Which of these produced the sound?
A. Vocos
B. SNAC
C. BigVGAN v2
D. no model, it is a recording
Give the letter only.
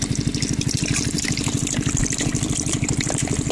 C